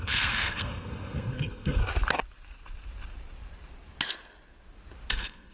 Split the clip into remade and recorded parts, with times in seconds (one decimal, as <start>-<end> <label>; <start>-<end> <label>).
0.0-1.8 remade; 1.8-5.1 recorded; 5.1-5.5 remade